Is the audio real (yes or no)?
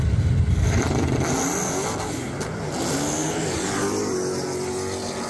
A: yes